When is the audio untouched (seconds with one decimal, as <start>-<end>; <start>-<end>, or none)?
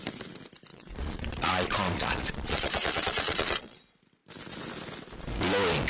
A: 0.0-0.7; 3.8-5.9